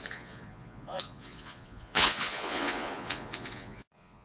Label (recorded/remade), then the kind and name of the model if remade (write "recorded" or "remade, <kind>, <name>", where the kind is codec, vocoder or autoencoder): remade, vocoder, Vocos